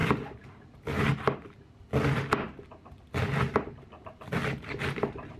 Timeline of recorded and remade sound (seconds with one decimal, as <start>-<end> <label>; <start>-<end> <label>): 0.0-5.4 recorded